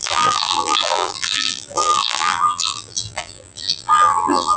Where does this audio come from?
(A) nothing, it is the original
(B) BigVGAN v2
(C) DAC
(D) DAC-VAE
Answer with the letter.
B